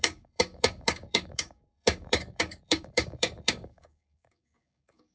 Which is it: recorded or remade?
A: remade